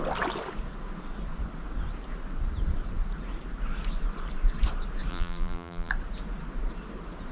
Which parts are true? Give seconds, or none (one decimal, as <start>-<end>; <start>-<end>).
0.0-5.1; 5.9-7.3